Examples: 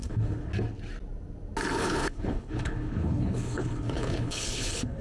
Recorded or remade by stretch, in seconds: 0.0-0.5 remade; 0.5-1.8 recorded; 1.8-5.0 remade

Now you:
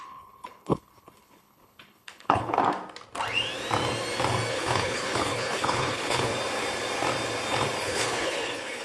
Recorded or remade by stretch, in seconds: 0.0-2.6 remade; 2.6-4.5 recorded; 4.5-6.3 remade; 6.3-7.8 recorded; 7.8-8.8 remade